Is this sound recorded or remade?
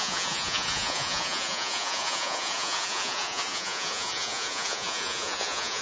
remade